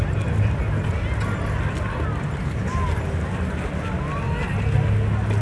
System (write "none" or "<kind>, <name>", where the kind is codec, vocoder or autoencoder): none